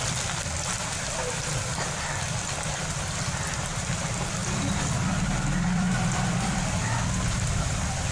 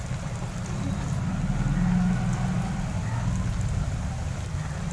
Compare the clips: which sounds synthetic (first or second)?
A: first